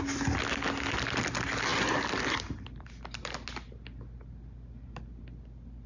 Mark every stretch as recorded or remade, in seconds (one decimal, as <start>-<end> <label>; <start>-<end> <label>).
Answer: 0.0-5.9 recorded